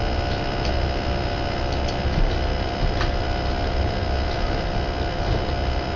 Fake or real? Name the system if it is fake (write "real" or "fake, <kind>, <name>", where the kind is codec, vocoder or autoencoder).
real